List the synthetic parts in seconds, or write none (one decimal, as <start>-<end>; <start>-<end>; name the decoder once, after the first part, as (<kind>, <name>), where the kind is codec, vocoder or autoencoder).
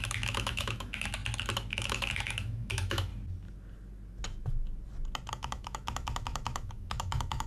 0.0-1.2 (autoencoder, DAC-VAE); 1.7-3.1; 5.3-7.5